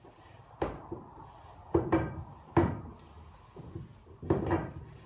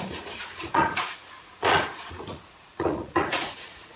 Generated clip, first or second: second